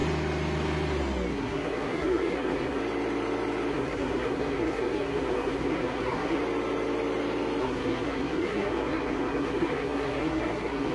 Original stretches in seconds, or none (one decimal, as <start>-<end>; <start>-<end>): 0.0-1.3; 2.8-3.7; 6.4-7.6